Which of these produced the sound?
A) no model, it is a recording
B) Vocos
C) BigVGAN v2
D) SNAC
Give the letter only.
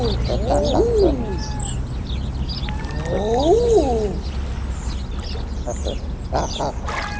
A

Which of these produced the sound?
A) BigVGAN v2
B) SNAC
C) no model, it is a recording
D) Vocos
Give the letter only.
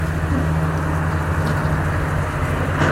C